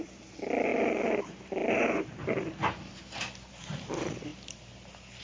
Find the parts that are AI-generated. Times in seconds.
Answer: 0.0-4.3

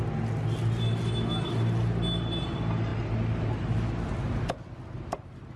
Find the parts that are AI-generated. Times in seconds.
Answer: none

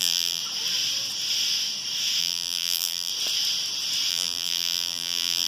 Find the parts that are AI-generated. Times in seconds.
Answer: 0.0-0.4; 2.2-3.1; 4.1-5.5